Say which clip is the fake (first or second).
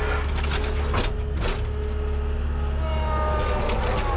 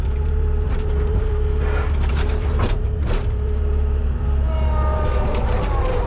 second